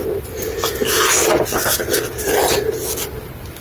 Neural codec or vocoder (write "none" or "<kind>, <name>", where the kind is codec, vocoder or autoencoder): none